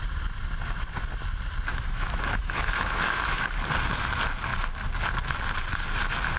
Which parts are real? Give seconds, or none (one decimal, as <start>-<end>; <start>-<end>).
0.0-1.7; 3.5-6.4